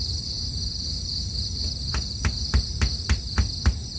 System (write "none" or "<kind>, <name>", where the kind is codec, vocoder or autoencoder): none